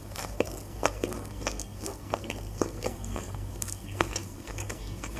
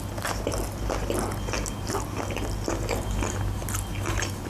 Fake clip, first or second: first